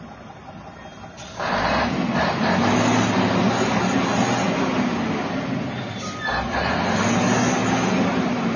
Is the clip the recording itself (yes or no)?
yes